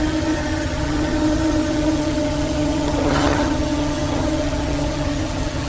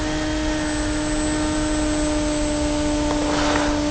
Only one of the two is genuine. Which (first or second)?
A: second